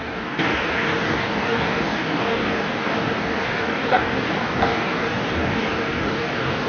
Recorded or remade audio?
remade